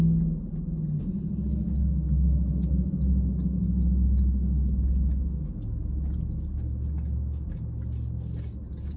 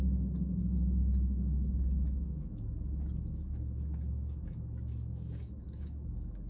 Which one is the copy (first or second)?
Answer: second